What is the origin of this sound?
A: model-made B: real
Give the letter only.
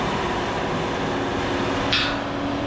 B